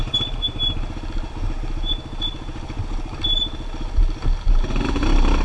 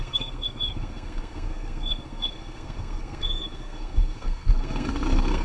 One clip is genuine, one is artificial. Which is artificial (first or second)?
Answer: second